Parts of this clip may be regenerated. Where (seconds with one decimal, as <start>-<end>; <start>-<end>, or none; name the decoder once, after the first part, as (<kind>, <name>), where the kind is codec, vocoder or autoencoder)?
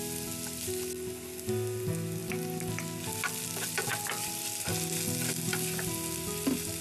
3.9-4.7 (vocoder, BigVGAN v2)